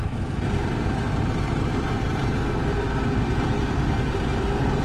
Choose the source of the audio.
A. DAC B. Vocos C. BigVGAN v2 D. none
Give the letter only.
C